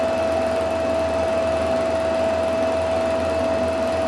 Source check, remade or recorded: recorded